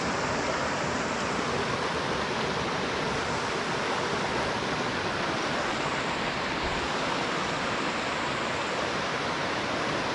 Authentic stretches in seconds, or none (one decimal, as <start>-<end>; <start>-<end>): 0.0-10.1